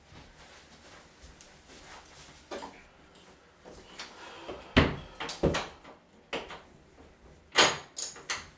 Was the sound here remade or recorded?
recorded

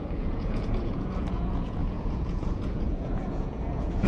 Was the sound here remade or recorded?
remade